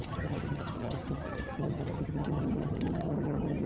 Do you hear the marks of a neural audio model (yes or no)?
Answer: yes